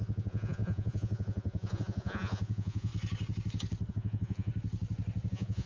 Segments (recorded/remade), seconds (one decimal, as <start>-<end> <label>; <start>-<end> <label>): 0.0-2.9 remade; 2.9-3.9 recorded; 3.9-4.5 remade; 4.5-5.3 recorded; 5.3-5.7 remade